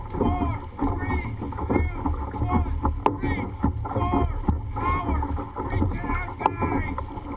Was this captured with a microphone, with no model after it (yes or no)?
yes